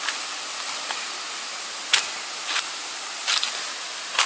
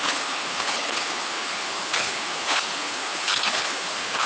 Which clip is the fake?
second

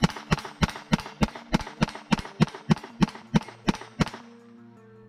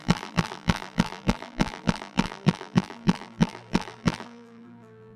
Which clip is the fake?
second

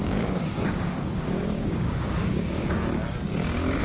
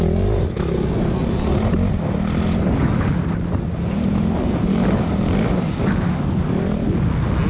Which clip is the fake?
first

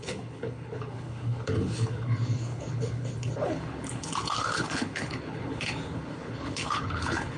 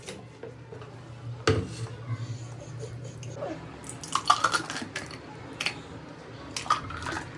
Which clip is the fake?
first